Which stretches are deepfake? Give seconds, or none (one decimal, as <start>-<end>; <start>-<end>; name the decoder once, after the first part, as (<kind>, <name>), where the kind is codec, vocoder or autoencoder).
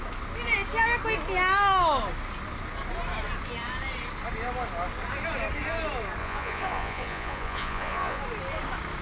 6.2-8.2 (vocoder, Vocos)